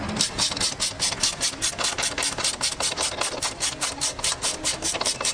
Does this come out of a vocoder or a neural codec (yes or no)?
no